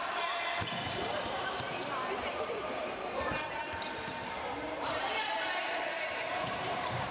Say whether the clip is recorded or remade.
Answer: remade